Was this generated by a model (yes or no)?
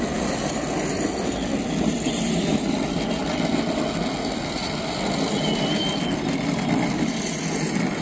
no